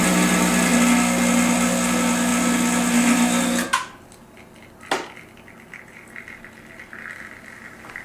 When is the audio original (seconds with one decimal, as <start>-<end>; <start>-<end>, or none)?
0.0-8.0